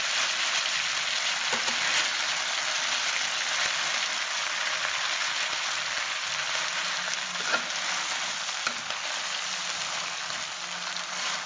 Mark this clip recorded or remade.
recorded